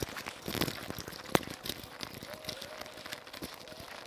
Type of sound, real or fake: real